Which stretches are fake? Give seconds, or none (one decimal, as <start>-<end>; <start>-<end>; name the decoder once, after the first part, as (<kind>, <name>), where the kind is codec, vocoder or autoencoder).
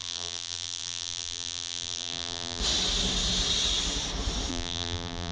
0.0-2.6 (vocoder, BigVGAN v2); 4.5-5.3